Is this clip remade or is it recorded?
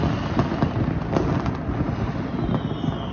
recorded